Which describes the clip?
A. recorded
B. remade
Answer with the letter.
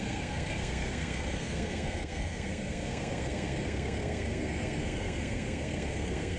B